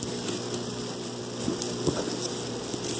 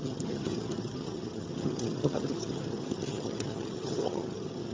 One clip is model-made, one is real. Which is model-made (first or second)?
second